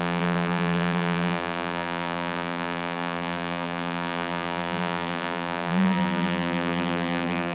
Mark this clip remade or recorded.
remade